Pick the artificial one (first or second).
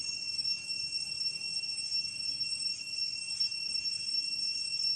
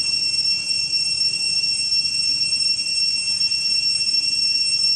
first